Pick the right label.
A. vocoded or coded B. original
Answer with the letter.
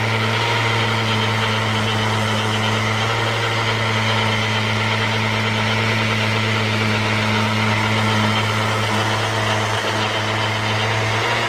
B